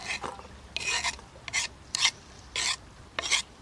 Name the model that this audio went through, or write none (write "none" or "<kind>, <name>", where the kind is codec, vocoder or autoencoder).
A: none